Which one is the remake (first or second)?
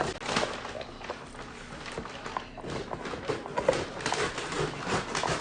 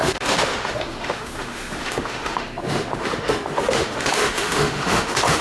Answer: second